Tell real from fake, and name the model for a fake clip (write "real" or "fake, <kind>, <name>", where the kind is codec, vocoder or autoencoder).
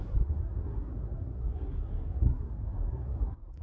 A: fake, codec, SNAC